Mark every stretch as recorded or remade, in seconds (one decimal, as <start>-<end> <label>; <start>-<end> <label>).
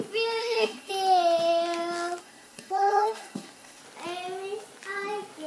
0.0-0.4 recorded; 0.4-0.9 remade; 0.9-2.2 recorded; 2.2-3.8 remade; 3.8-5.5 recorded